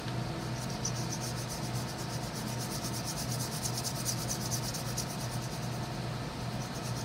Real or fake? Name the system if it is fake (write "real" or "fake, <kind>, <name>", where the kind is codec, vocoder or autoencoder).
real